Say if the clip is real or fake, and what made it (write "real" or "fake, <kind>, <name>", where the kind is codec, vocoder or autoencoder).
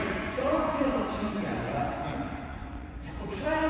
fake, vocoder, Vocos